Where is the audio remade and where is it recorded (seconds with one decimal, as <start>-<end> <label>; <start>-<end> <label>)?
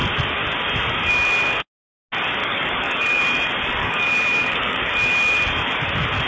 0.0-2.4 recorded; 2.4-3.2 remade; 3.2-3.8 recorded; 3.8-4.9 remade; 4.9-6.3 recorded